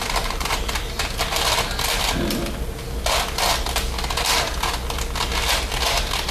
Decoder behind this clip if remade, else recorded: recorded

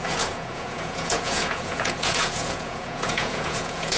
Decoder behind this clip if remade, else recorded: remade, vocoder, Vocos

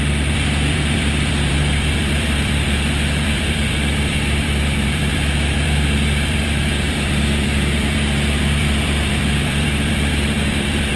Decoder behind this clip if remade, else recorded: remade, vocoder, BigVGAN v2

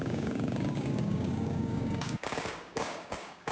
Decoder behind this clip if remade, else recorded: remade, codec, DAC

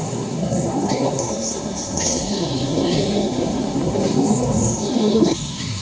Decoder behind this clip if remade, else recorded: remade, codec, SNAC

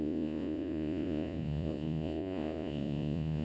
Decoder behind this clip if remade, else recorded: remade, vocoder, Vocos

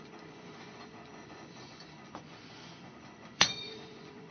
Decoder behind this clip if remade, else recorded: remade, vocoder, Vocos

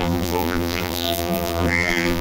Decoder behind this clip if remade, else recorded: remade, vocoder, BigVGAN v2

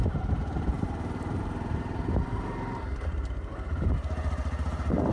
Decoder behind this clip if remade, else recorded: remade, vocoder, BigVGAN v2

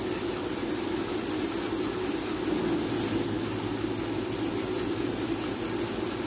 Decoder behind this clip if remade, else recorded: recorded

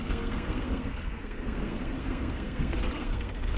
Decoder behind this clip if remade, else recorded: remade, codec, SNAC